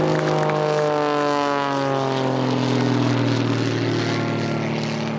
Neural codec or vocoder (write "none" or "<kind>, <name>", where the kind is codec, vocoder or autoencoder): none